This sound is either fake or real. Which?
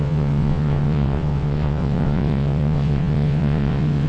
fake